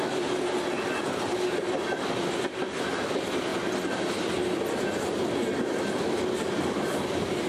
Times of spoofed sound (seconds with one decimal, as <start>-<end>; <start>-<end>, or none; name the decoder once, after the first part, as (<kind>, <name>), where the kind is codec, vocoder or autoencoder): none

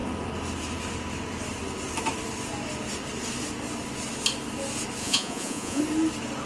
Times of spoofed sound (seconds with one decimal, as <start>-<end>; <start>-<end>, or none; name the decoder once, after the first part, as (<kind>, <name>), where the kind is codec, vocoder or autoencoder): 5.0-5.8 (vocoder, Vocos)

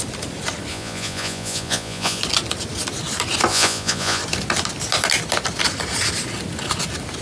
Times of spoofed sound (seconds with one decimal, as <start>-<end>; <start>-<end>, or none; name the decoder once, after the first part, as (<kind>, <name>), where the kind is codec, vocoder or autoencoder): 0.7-2.2 (vocoder, Vocos); 3.5-4.2

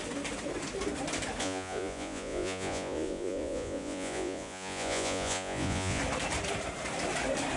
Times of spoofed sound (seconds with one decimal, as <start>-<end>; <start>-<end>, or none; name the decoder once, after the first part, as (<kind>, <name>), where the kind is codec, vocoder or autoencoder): 1.4-6.0 (vocoder, Vocos)

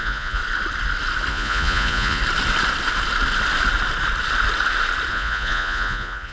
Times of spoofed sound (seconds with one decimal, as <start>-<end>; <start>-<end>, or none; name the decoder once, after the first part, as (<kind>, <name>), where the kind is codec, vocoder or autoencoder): 0.0-0.4 (vocoder, Vocos); 1.3-2.2; 5.1-6.3

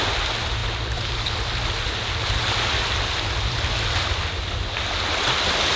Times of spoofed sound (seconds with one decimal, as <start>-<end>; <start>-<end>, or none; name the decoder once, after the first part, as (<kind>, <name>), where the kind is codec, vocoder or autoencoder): none